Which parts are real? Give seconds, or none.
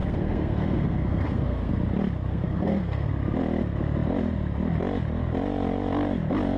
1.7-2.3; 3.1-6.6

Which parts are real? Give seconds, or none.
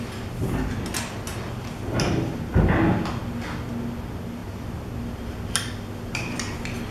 0.0-6.9